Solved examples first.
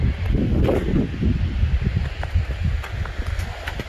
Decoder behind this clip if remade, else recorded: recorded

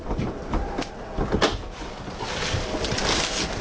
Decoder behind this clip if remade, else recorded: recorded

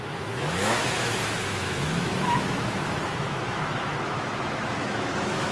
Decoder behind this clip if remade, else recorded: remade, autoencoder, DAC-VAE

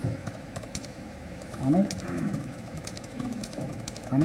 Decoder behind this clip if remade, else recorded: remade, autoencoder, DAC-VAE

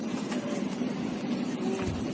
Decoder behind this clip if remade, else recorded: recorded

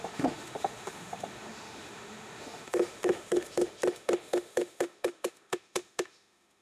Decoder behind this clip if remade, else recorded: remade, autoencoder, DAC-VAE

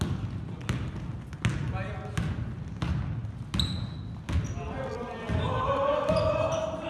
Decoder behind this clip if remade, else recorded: recorded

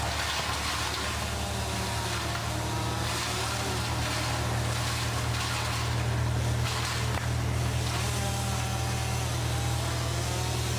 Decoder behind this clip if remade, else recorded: recorded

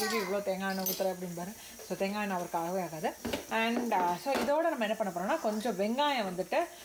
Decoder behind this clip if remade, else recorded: recorded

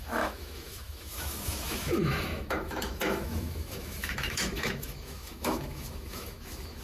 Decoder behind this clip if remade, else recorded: remade, autoencoder, DAC-VAE